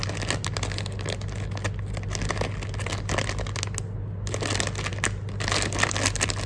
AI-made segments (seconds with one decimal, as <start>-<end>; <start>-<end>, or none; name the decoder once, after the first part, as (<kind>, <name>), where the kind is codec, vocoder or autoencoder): none